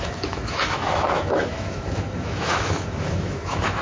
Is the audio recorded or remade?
remade